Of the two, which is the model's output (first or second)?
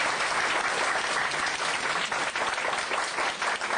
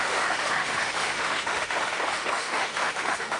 second